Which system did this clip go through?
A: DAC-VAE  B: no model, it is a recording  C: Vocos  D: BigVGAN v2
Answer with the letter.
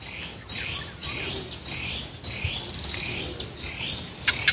B